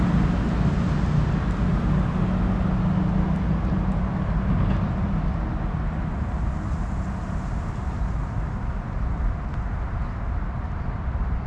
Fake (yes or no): no